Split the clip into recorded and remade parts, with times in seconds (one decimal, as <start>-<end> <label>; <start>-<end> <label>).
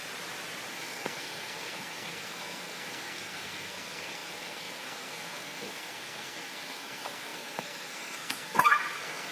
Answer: 0.0-0.7 recorded; 0.7-9.3 remade